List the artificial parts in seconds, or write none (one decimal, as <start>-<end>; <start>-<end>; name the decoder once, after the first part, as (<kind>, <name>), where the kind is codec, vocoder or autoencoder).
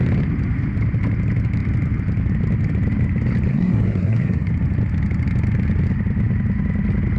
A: 3.5-4.5 (codec, SNAC)